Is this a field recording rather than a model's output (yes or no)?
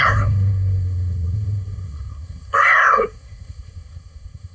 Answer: no